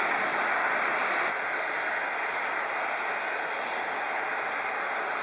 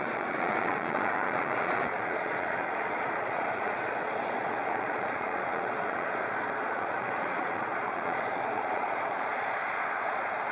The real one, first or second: first